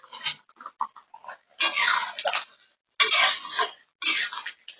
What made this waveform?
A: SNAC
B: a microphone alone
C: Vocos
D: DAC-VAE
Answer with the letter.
B